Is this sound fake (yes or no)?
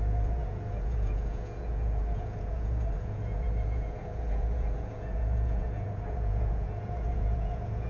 yes